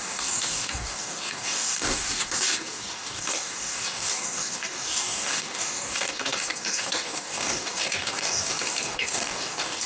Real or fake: fake